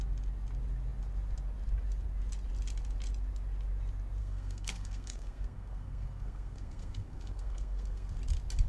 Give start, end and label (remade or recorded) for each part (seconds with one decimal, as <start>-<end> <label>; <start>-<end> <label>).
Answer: 0.0-4.2 recorded; 4.2-8.2 remade; 8.2-8.7 recorded